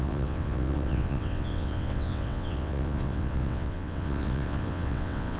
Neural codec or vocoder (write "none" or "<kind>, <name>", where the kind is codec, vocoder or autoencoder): vocoder, WaveNeXt